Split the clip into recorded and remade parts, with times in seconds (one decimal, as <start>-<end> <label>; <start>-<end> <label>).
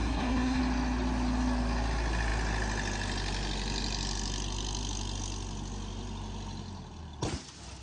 0.0-0.6 remade; 0.6-7.8 recorded